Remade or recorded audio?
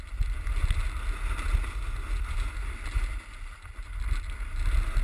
recorded